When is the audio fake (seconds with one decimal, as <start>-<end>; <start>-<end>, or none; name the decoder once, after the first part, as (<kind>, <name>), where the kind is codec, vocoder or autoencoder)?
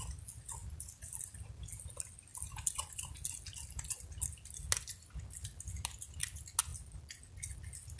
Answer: 0.6-1.2 (vocoder, BigVGAN v2); 2.3-4.2